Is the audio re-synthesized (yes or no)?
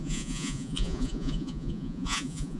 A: yes